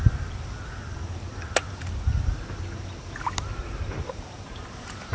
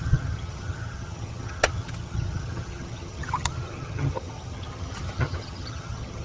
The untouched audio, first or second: first